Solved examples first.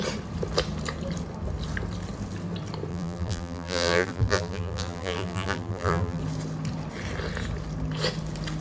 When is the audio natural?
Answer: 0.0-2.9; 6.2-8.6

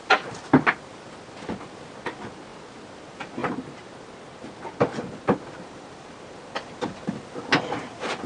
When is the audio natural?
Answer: 0.0-3.4; 3.9-8.3

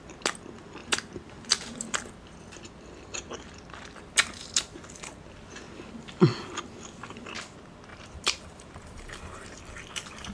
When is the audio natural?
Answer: 0.0-0.8; 1.8-7.9; 9.6-10.3

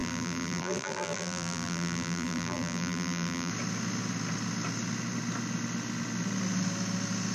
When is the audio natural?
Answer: 3.5-7.3

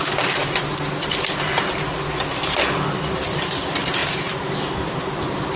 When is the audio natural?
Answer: 0.0-5.6

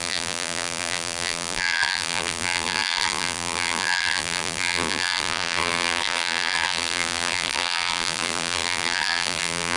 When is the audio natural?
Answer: none